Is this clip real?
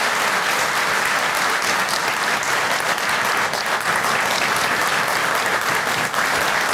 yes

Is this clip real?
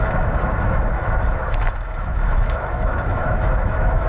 no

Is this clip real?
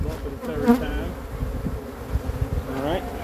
yes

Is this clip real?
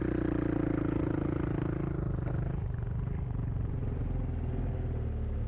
yes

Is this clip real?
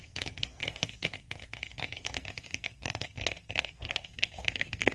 no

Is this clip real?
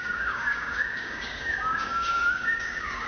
no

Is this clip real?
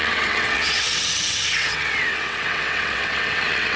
no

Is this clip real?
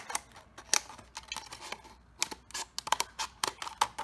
yes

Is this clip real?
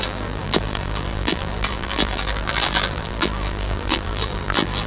no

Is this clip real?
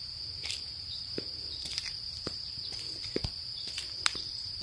no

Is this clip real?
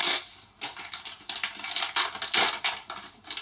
yes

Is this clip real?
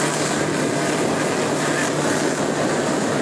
yes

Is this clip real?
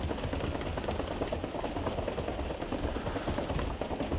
yes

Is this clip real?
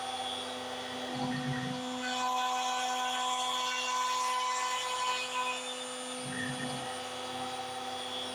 yes